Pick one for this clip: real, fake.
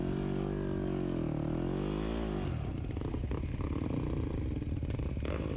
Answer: real